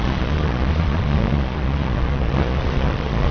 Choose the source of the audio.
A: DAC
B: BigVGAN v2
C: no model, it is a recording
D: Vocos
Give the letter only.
D